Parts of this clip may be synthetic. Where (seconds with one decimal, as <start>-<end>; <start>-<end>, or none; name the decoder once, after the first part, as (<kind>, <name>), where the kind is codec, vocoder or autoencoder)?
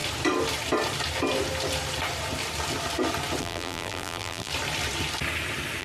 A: 3.4-4.5 (vocoder, BigVGAN v2)